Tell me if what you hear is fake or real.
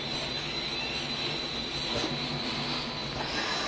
real